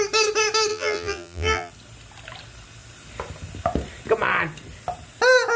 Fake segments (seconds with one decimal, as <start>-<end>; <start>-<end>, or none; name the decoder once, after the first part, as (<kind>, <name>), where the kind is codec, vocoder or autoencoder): 0.7-1.7 (vocoder, BigVGAN v2)